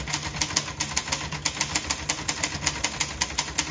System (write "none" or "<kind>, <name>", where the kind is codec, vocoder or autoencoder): none